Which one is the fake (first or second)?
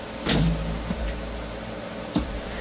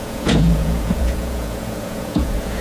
second